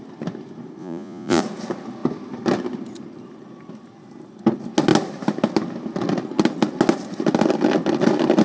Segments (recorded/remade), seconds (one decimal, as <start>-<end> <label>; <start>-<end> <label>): 0.0-0.8 recorded; 0.8-1.4 remade; 1.4-8.4 recorded